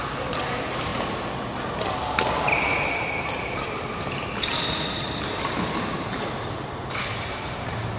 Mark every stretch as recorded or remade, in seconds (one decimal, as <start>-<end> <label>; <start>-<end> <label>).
0.0-0.9 remade; 0.9-2.7 recorded; 2.7-8.0 remade

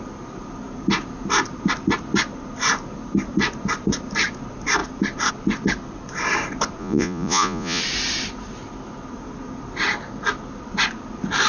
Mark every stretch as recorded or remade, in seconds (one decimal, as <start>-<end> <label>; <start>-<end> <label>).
0.0-6.8 recorded; 6.8-7.8 remade; 7.8-11.5 recorded

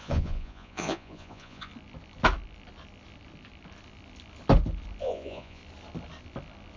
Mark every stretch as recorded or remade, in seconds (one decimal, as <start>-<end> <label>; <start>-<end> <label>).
0.0-1.7 remade; 1.7-5.0 recorded; 5.0-5.6 remade; 5.6-6.8 recorded

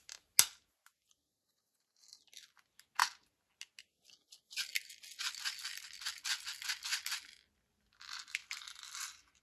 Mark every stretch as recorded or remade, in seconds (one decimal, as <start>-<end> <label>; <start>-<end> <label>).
0.0-8.4 recorded; 8.4-9.4 remade

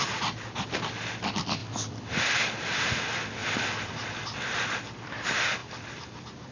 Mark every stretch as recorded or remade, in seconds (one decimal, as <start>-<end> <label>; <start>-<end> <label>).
0.0-1.6 recorded; 1.6-3.0 remade; 3.0-3.4 recorded; 3.4-3.9 remade; 3.9-5.6 recorded; 5.6-6.5 remade

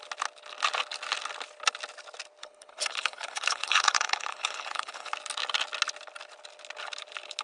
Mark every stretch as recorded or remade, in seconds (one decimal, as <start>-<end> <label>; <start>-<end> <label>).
0.0-2.4 recorded; 2.4-5.1 remade; 5.1-7.4 recorded